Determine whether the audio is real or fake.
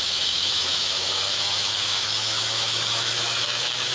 fake